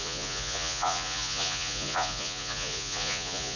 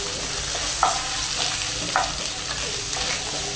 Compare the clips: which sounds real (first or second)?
second